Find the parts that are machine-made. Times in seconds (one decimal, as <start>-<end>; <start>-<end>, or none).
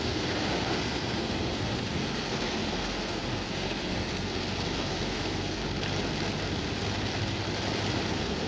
0.0-5.6; 8.1-8.5